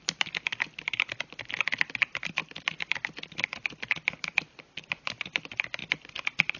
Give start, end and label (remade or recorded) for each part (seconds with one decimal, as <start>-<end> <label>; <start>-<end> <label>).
0.0-2.4 recorded; 2.4-3.3 remade; 3.3-6.6 recorded